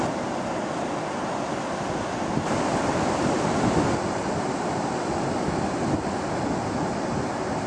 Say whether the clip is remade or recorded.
recorded